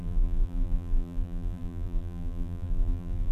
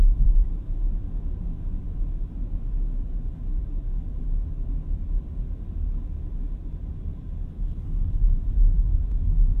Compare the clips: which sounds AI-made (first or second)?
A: first